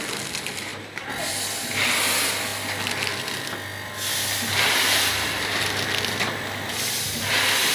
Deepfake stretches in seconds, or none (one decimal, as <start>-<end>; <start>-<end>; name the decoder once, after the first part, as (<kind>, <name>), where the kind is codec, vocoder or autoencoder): none